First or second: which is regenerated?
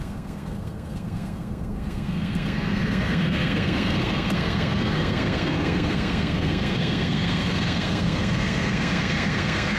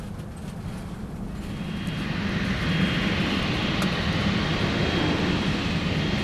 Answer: first